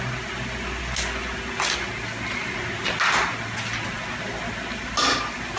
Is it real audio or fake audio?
real